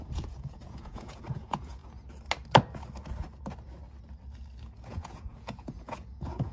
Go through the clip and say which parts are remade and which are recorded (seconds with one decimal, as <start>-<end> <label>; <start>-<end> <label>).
0.0-1.8 remade; 1.8-4.9 recorded; 4.9-6.5 remade